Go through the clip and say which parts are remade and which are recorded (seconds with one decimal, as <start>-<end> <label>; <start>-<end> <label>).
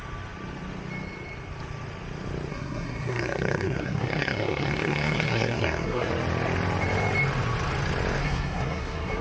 0.0-2.5 recorded; 2.5-6.1 remade; 6.1-8.2 recorded; 8.2-9.2 remade